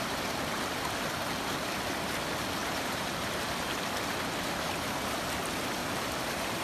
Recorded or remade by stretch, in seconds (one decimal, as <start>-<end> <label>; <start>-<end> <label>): 0.0-2.6 recorded; 2.6-3.3 remade; 3.3-5.8 recorded; 5.8-6.6 remade